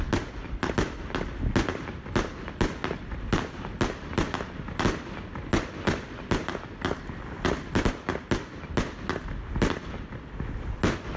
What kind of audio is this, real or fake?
real